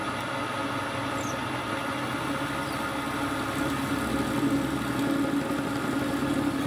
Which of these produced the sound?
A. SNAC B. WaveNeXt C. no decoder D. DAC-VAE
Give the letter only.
C